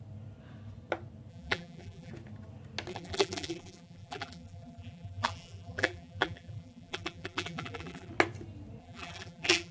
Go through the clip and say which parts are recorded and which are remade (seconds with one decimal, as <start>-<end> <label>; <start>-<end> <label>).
0.0-1.3 recorded; 1.3-2.1 remade; 2.1-2.9 recorded; 2.9-8.1 remade; 8.1-8.8 recorded; 8.8-9.7 remade